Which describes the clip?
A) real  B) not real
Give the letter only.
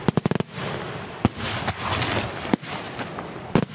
A